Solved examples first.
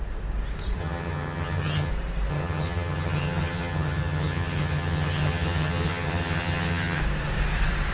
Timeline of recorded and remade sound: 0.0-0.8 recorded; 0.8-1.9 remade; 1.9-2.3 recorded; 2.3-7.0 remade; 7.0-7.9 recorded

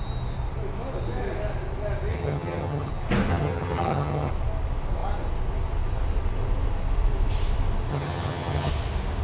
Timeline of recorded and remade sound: 0.0-2.1 recorded; 2.1-2.9 remade; 2.9-3.3 recorded; 3.3-4.3 remade; 4.3-7.9 recorded; 7.9-8.7 remade; 8.7-9.2 recorded